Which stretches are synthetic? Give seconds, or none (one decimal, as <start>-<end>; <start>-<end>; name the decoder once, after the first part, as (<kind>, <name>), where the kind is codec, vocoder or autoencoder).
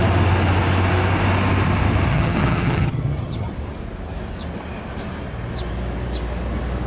2.1-3.5 (vocoder, HiFi-GAN)